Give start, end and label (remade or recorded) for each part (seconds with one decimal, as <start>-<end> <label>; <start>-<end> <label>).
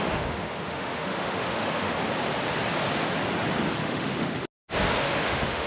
0.0-1.9 remade; 1.9-3.8 recorded; 3.8-4.4 remade; 4.4-5.0 recorded; 5.0-5.7 remade